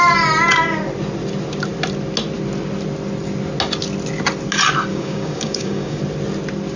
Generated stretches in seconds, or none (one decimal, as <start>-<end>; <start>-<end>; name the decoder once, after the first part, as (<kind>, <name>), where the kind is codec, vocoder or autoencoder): 4.9-6.0 (codec, DAC)